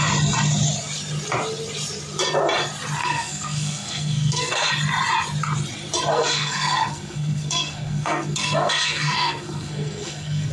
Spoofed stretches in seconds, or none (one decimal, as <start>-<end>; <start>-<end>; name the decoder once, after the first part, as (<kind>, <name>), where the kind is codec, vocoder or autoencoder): 3.0-4.7 (codec, SNAC); 6.1-10.5